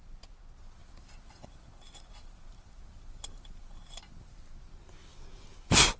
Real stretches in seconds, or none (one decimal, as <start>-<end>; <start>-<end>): 0.0-0.8; 4.4-6.0